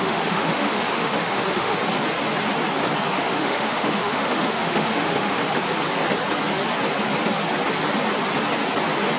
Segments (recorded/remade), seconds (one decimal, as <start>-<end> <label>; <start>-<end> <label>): 0.0-1.8 remade; 1.8-3.1 recorded; 3.1-5.4 remade; 5.4-9.2 recorded